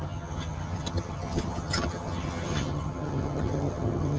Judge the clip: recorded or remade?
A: remade